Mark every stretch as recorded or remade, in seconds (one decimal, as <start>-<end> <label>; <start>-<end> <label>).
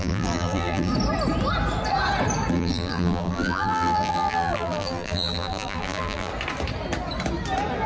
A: 0.0-0.9 remade; 0.9-2.5 recorded; 2.5-6.3 remade; 6.3-7.9 recorded